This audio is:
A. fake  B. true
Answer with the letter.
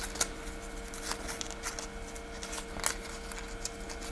B